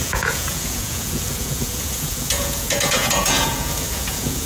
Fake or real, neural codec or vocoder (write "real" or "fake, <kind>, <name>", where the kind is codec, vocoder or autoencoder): fake, vocoder, Vocos